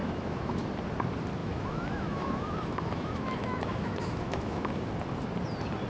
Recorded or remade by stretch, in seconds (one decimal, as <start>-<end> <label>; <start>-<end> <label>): 0.0-0.7 remade; 0.7-1.4 recorded; 1.4-4.9 remade; 4.9-5.9 recorded